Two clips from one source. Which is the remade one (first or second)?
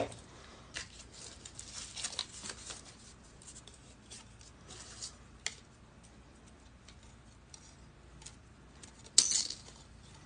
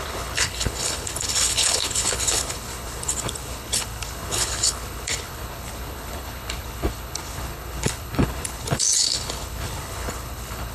second